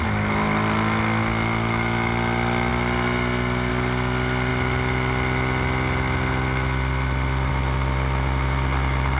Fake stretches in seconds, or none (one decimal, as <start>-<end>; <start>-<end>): none

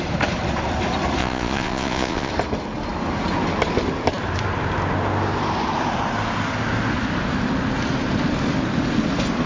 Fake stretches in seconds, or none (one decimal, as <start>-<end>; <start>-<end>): 1.2-2.3

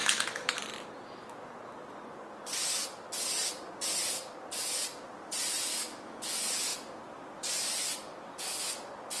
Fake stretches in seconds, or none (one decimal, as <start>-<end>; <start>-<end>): 0.0-0.6; 5.7-6.3

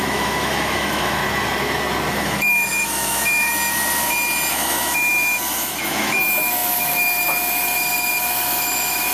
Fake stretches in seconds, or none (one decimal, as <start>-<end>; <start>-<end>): 0.0-1.2; 2.1-3.5; 4.5-9.1

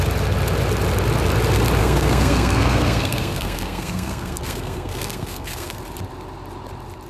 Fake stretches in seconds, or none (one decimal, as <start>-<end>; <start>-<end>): 1.8-5.8

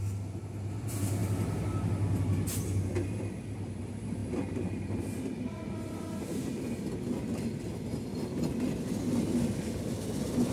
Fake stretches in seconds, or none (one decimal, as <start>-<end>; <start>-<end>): none